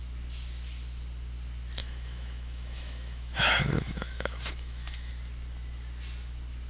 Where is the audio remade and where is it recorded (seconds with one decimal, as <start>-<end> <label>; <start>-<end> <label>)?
0.0-1.8 recorded; 1.8-5.1 remade; 5.1-6.7 recorded